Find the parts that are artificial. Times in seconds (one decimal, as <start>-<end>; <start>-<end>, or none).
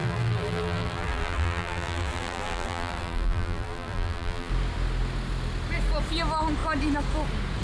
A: 0.0-4.5